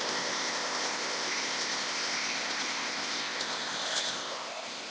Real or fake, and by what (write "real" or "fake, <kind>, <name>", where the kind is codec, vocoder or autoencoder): fake, codec, ZipCodec